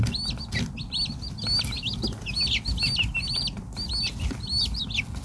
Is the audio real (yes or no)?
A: yes